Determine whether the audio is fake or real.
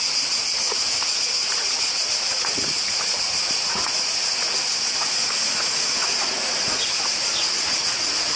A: fake